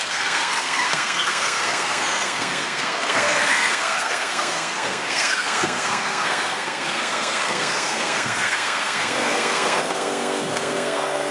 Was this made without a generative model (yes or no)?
no